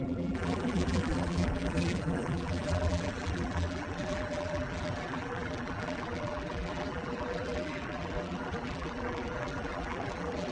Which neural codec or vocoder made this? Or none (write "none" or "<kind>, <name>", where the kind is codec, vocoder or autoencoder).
vocoder, BigVGAN v2